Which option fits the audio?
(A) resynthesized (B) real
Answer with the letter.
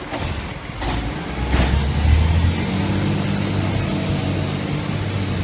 B